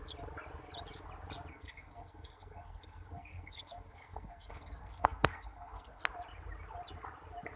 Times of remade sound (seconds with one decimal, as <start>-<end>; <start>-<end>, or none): 1.5-6.0